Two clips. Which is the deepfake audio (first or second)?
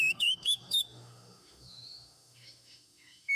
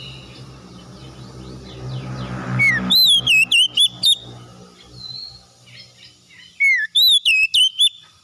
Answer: first